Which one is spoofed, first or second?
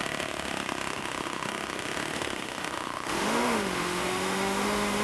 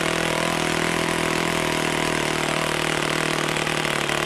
first